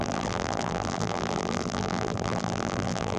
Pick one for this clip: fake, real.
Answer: fake